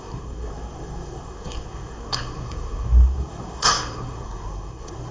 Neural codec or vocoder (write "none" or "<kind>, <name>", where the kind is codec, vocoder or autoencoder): codec, SNAC